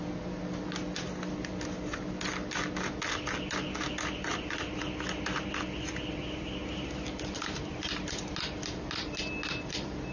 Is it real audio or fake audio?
real